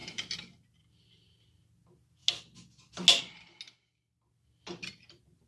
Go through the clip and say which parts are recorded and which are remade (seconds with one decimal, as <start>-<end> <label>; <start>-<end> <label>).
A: 0.0-5.5 recorded